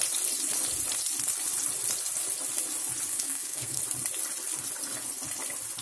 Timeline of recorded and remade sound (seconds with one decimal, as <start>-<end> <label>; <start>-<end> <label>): 0.0-3.1 recorded; 3.1-3.8 remade; 3.8-5.8 recorded